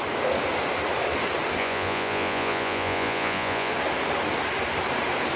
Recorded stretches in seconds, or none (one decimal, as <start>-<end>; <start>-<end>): 0.0-1.6; 3.7-5.4